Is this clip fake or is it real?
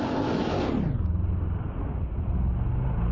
real